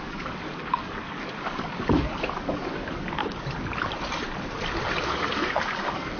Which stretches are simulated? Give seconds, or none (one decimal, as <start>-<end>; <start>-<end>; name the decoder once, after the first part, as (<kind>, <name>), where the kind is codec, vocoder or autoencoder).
0.0-3.2 (codec, DAC); 4.9-6.2